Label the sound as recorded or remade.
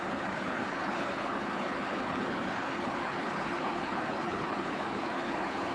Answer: remade